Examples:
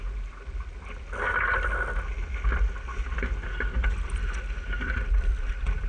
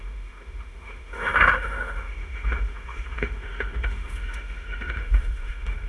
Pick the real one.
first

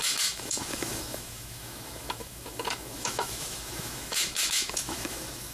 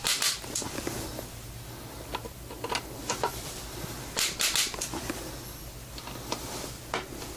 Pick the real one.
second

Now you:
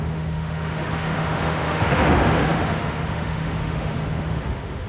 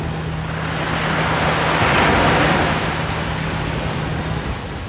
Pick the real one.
second